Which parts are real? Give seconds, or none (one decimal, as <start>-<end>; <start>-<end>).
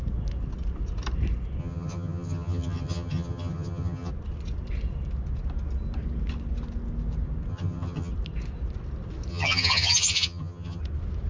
0.0-1.6; 4.1-7.5; 8.1-9.3; 10.8-11.3